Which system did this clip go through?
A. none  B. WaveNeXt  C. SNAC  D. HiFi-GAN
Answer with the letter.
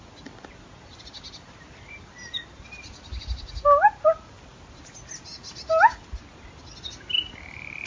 A